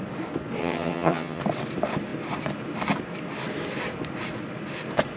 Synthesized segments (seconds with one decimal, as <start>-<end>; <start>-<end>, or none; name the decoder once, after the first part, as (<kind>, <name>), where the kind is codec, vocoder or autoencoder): 0.6-1.4 (vocoder, HiFi-GAN)